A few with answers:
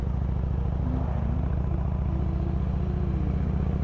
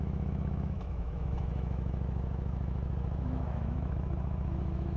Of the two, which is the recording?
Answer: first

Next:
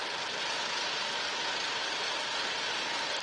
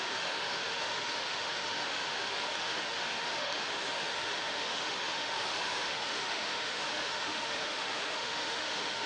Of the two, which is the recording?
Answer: first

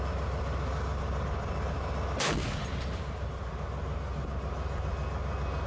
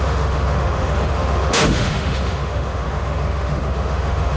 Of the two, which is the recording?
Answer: first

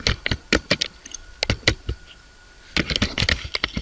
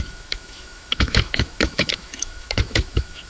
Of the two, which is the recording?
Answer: first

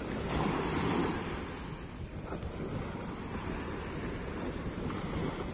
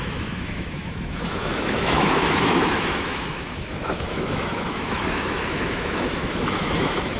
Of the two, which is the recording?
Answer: first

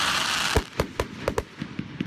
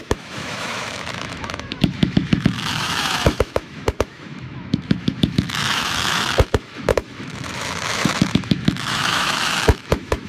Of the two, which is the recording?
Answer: first